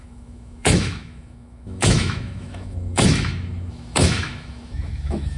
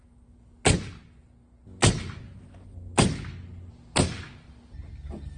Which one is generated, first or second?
first